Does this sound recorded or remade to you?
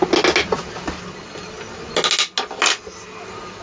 recorded